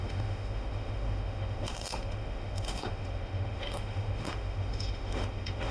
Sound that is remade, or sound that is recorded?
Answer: remade